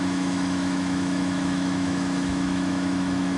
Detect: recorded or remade remade